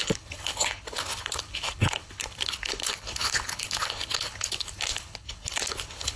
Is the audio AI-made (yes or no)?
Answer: yes